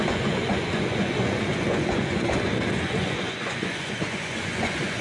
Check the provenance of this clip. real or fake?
fake